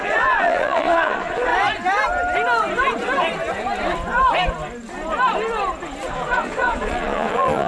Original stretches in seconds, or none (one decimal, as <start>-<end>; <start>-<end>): 1.5-6.1